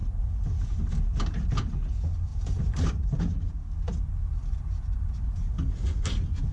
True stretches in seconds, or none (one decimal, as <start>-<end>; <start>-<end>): 0.0-2.3; 3.2-6.5